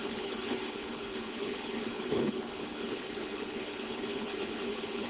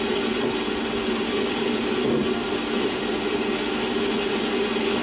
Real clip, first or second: second